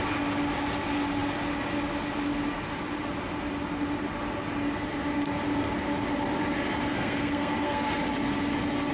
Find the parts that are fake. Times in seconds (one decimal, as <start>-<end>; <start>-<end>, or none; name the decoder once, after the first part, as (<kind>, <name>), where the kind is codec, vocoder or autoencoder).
6.9-7.9 (codec, SNAC)